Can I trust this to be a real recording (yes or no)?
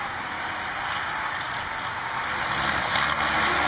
yes